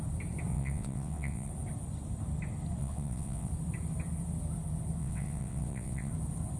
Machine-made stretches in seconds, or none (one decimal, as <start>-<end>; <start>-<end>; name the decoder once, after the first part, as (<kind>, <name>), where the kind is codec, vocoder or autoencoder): 0.5-1.5 (vocoder, WaveNeXt); 2.8-3.5; 5.0-6.1

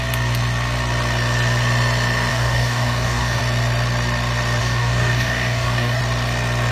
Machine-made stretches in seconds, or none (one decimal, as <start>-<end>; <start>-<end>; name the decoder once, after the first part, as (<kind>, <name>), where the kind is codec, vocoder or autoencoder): 2.3-3.4 (codec, DAC); 4.6-6.0

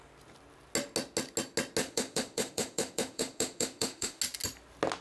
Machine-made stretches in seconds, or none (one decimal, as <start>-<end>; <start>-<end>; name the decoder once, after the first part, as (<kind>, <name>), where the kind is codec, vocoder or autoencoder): 1.8-4.2 (autoencoder, DAC-VAE)

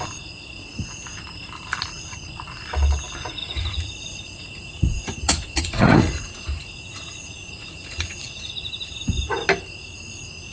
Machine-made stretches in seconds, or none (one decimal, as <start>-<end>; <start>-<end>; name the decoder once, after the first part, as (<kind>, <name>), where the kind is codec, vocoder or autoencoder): 3.4-8.5 (vocoder, Vocos)

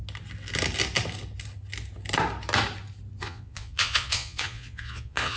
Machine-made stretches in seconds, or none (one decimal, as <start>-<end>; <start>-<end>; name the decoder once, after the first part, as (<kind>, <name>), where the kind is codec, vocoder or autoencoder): 3.2-5.4 (vocoder, Vocos)

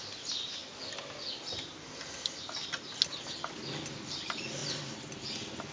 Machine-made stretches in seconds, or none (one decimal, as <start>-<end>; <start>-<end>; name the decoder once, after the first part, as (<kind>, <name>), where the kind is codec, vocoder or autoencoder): none